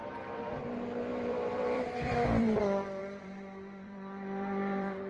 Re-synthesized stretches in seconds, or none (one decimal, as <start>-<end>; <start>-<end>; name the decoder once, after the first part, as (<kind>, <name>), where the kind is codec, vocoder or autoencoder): 0.0-0.5 (vocoder, BigVGAN v2); 1.1-2.6; 3.0-5.1